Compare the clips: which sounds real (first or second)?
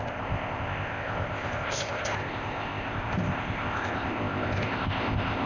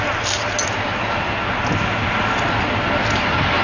second